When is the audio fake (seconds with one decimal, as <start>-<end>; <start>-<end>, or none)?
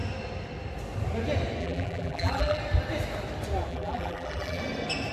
1.6-2.6; 3.7-4.6